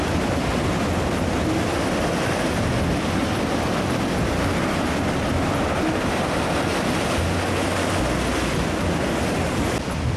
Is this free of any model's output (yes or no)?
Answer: yes